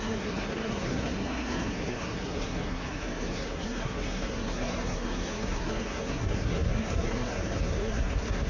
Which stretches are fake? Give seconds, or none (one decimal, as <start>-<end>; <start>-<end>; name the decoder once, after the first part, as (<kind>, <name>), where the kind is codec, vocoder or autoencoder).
0.0-8.5 (codec, SNAC)